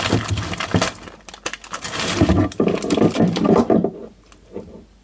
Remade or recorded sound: recorded